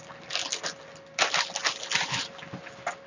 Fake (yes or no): no